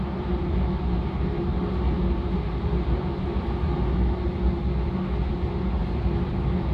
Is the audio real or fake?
real